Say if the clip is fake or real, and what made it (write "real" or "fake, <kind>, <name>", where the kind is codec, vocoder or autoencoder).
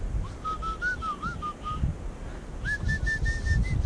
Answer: real